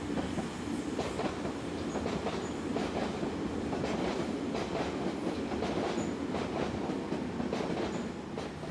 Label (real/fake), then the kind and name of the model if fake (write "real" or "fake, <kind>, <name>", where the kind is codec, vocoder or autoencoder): real